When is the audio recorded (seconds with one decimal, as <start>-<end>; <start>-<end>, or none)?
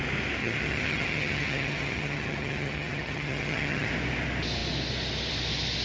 0.0-0.4; 3.9-5.8